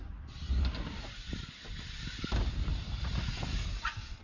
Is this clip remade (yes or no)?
no